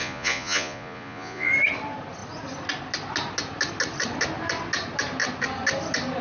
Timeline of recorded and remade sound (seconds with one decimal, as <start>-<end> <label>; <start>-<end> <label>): 0.0-1.5 remade; 1.5-6.2 recorded